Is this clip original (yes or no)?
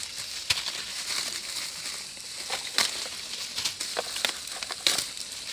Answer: yes